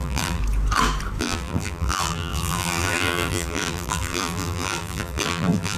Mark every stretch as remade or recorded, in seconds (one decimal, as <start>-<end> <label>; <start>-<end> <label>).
0.0-0.4 remade; 0.4-1.2 recorded; 1.2-5.8 remade